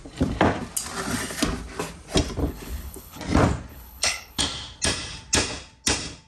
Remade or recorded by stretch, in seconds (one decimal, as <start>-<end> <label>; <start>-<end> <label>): 0.0-2.4 recorded; 2.4-3.2 remade; 3.2-3.7 recorded; 3.7-4.4 remade; 4.4-6.3 recorded